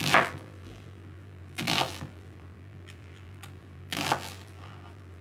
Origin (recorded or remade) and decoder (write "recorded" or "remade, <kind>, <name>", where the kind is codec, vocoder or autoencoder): remade, vocoder, BigVGAN v2